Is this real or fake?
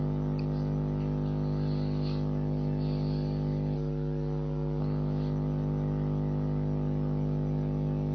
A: real